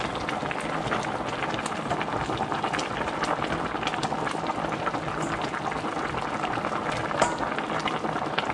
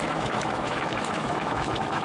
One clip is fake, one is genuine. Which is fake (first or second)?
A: second